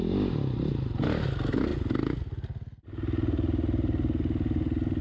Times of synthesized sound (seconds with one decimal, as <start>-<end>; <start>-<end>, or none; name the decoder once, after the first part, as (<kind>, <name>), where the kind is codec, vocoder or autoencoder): none